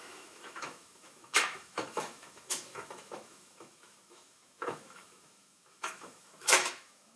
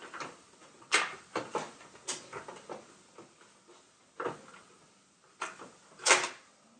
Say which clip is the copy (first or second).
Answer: first